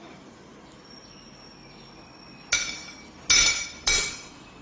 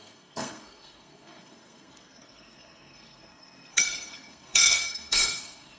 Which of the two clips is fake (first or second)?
second